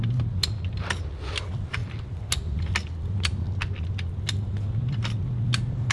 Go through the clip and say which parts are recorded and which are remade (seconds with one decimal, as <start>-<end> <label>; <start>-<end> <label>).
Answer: 0.0-5.9 recorded